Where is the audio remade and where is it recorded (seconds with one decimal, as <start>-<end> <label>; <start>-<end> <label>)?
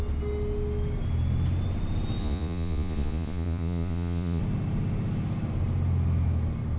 0.0-2.2 recorded; 2.2-4.4 remade; 4.4-6.8 recorded